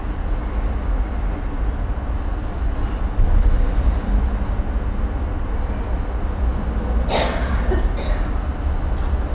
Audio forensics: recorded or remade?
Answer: recorded